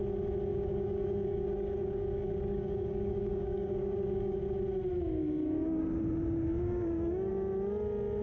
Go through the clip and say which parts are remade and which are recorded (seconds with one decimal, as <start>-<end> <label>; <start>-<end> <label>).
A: 0.0-0.5 recorded; 0.5-4.4 remade; 4.4-5.2 recorded; 5.2-5.8 remade; 5.8-6.5 recorded; 6.5-7.3 remade; 7.3-8.2 recorded